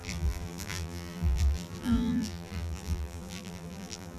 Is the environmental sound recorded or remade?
remade